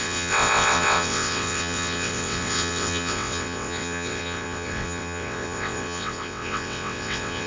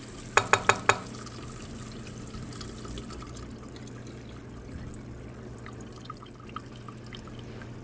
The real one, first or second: second